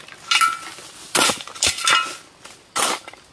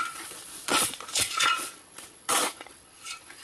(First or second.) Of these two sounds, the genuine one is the first